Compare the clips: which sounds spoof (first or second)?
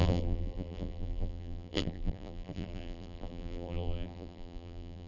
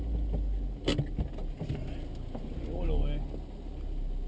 first